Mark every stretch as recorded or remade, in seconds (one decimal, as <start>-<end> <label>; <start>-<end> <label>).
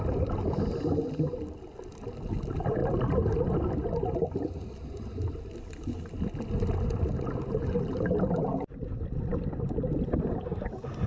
0.0-11.1 recorded